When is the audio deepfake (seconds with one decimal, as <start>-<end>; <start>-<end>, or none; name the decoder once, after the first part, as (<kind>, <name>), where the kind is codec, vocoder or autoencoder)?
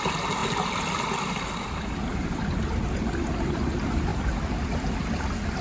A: none